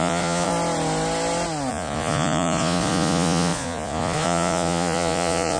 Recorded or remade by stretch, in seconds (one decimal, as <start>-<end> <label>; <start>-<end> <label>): 0.0-0.5 remade; 0.5-1.7 recorded; 1.7-5.6 remade